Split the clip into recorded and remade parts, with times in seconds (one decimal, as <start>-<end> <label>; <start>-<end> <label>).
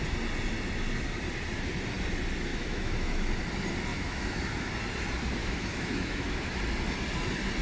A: 0.0-2.5 recorded; 2.5-3.4 remade; 3.4-3.9 recorded; 3.9-4.7 remade; 4.7-5.4 recorded; 5.4-6.6 remade; 6.6-7.6 recorded